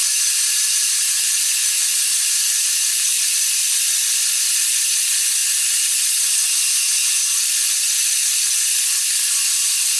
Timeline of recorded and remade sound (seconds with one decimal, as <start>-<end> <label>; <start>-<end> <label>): 0.0-3.7 remade; 3.7-10.0 recorded